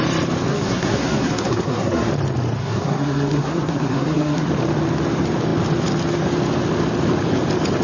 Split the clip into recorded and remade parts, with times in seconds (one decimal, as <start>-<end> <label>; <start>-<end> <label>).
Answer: 0.0-0.5 recorded; 0.5-2.1 remade; 2.1-2.6 recorded; 2.6-4.5 remade; 4.5-7.8 recorded